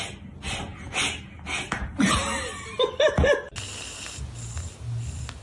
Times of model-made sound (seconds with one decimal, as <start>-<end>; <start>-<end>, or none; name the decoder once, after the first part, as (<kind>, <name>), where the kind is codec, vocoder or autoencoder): none